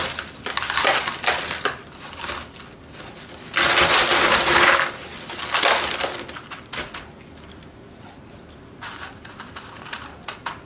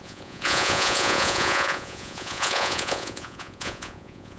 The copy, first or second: second